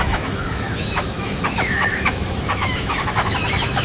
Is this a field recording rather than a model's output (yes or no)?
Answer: no